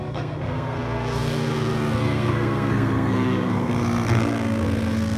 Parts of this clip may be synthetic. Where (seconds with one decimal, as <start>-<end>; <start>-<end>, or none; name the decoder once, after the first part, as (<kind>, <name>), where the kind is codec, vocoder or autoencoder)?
0.0-5.2 (codec, SNAC)